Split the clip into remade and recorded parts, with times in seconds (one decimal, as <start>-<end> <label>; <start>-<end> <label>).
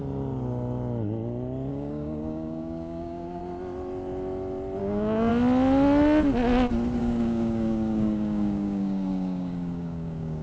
0.0-1.7 recorded; 1.7-3.4 remade; 3.4-4.8 recorded; 4.8-5.3 remade; 5.3-7.0 recorded; 7.0-10.4 remade